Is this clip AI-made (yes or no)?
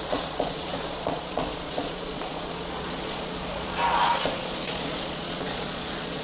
yes